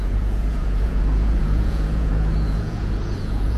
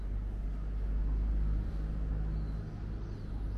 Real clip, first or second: second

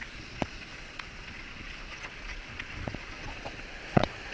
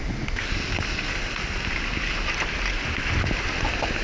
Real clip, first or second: second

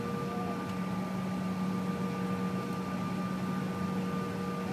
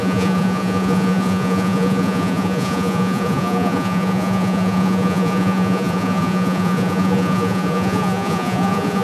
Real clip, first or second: first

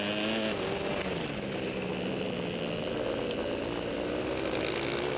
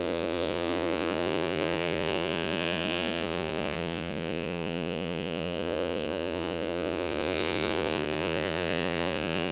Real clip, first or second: first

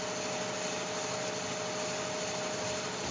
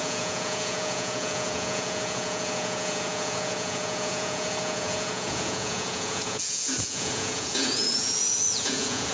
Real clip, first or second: first